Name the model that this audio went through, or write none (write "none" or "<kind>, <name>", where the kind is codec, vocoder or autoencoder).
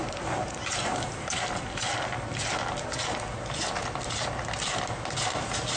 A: none